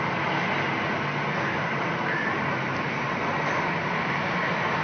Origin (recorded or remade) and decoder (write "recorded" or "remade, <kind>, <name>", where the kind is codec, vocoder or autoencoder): recorded